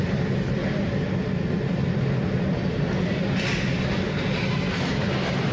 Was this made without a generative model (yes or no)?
yes